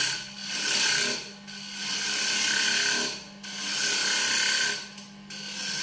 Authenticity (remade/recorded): recorded